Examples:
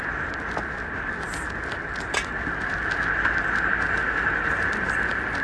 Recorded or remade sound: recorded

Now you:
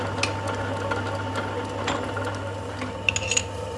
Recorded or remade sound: recorded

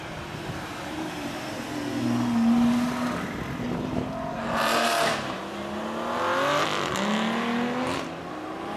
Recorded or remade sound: recorded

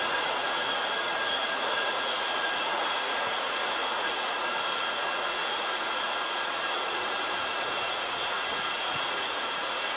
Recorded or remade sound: remade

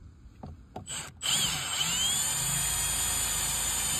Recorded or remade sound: recorded